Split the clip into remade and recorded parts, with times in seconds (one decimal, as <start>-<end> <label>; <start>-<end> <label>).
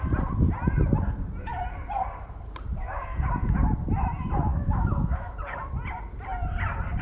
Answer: 0.0-4.5 recorded; 4.5-5.4 remade; 5.4-7.0 recorded